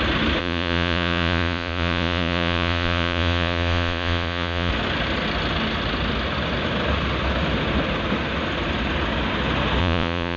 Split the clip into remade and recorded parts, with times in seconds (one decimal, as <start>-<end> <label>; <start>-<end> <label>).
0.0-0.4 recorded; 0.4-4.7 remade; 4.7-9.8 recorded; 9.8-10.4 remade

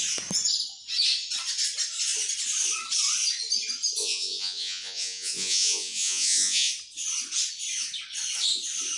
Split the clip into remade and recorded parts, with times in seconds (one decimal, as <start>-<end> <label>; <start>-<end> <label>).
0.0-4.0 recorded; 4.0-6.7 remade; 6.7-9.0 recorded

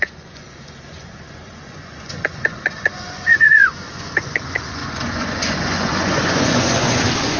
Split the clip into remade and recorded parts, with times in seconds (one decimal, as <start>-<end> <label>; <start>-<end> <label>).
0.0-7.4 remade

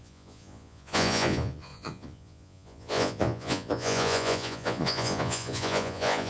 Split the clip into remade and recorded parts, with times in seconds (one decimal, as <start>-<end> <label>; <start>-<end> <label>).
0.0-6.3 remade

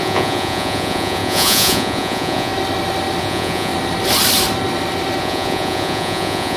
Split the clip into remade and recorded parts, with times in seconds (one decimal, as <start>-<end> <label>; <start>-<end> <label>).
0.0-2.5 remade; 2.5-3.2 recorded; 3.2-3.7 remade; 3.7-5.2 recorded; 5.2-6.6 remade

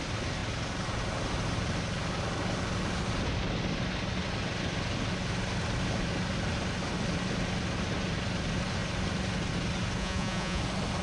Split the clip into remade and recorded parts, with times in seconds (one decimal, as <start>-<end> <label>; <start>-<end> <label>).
0.0-10.0 recorded; 10.0-10.6 remade; 10.6-11.0 recorded

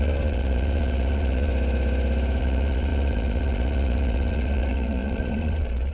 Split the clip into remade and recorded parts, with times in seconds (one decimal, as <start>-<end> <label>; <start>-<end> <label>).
0.0-1.5 remade; 1.5-2.4 recorded; 2.4-5.9 remade

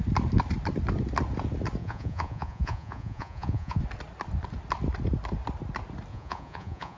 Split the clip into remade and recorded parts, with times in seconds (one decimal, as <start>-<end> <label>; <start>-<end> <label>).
0.0-1.8 recorded; 1.8-3.8 remade; 3.8-6.1 recorded; 6.1-7.0 remade